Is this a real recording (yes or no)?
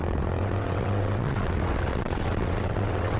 no